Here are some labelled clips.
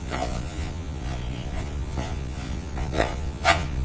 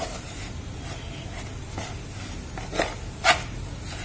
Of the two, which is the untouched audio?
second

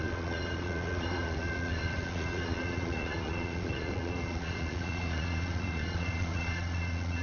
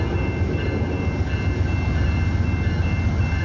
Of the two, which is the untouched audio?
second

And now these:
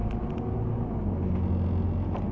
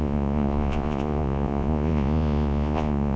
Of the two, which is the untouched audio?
first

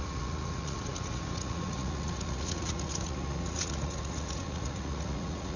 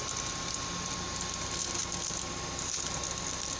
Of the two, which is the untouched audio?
second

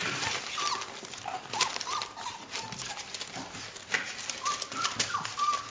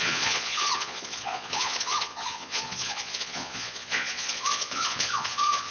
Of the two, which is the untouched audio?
first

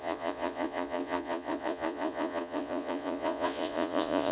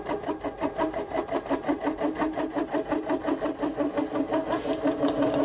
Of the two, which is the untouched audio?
second